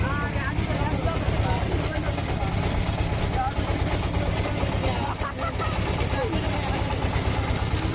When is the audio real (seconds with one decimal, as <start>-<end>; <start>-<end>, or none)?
0.0-7.9